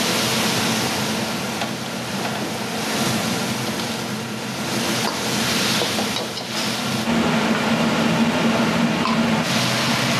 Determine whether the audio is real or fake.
real